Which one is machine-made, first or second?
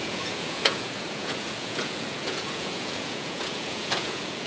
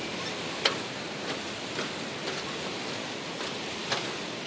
first